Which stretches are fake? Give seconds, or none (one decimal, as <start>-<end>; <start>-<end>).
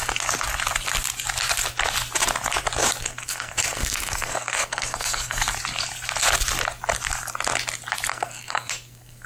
3.0-5.4; 8.1-9.3